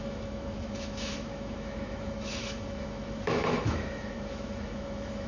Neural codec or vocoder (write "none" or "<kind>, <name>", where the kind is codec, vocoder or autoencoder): autoencoder, DAC-VAE